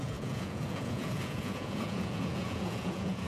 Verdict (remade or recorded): remade